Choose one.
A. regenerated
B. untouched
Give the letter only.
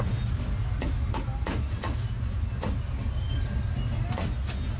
B